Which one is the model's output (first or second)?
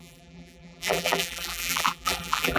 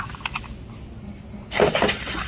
first